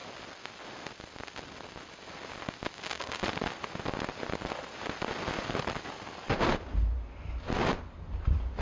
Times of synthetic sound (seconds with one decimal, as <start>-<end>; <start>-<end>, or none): none